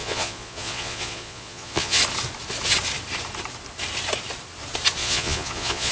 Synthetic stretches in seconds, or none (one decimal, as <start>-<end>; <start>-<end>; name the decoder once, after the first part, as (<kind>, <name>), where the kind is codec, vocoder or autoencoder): 0.0-2.0 (vocoder, Vocos); 5.0-5.9